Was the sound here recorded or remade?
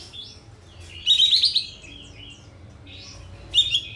recorded